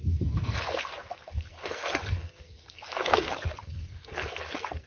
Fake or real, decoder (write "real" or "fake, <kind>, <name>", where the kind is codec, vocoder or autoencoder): fake, codec, SNAC